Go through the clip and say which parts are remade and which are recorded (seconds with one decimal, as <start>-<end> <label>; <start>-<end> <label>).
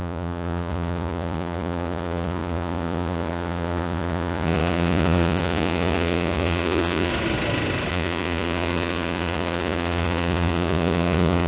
0.0-7.1 remade; 7.1-7.9 recorded; 7.9-11.5 remade